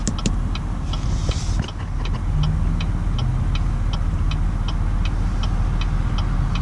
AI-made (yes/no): no